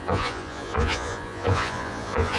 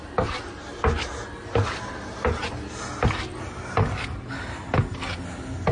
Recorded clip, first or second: second